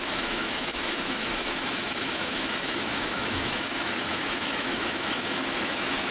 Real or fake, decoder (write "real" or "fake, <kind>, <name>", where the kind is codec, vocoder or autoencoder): fake, autoencoder, DAC-VAE